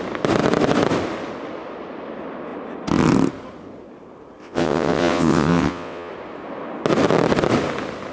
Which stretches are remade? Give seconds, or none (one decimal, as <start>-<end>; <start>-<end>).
4.4-6.1